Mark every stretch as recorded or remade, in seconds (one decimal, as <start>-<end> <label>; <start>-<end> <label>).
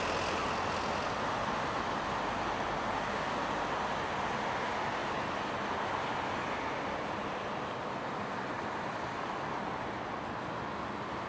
0.0-0.4 recorded; 0.4-2.0 remade; 2.0-11.3 recorded